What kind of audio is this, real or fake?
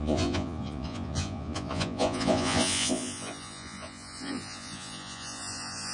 fake